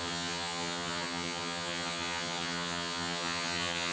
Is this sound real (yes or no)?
no